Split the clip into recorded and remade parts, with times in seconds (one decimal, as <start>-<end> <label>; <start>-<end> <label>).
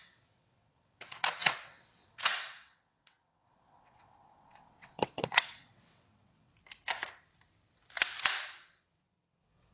0.0-6.5 remade; 6.5-8.6 recorded; 8.6-9.7 remade